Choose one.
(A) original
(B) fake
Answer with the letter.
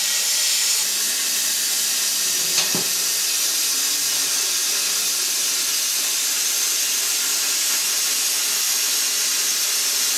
A